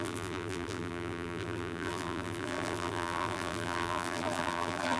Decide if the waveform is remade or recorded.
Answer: remade